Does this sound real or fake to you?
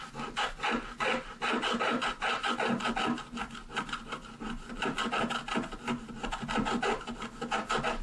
real